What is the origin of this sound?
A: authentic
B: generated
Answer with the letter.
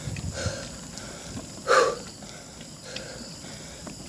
A